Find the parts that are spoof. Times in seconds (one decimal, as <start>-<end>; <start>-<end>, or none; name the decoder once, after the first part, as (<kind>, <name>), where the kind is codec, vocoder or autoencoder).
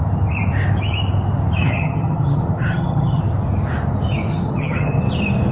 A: 1.6-3.2 (vocoder, HiFi-GAN); 4.3-5.0